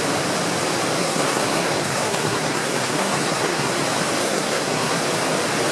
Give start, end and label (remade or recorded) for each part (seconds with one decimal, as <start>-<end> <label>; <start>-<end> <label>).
0.0-1.0 recorded; 1.0-3.7 remade; 3.7-4.2 recorded; 4.2-5.0 remade; 5.0-5.7 recorded